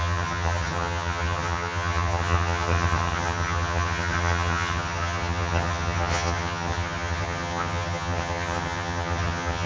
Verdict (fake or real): fake